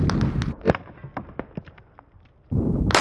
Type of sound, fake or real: real